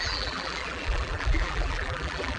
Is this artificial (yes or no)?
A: yes